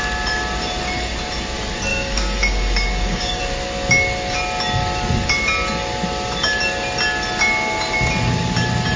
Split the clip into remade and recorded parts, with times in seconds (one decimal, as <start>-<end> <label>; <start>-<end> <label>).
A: 0.0-1.9 recorded; 1.9-3.4 remade; 3.4-9.0 recorded